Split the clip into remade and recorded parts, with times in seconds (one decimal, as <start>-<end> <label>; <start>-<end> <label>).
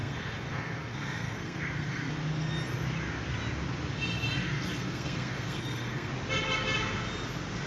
0.0-2.2 remade; 2.2-4.4 recorded; 4.4-6.1 remade; 6.1-7.7 recorded